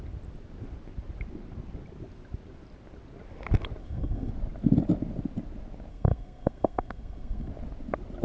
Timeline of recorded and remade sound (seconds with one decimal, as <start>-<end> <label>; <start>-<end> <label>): 0.0-3.8 recorded; 3.8-4.3 remade; 4.3-5.9 recorded; 5.9-7.5 remade; 7.5-8.2 recorded